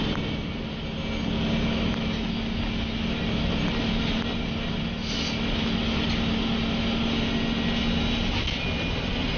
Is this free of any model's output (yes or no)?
yes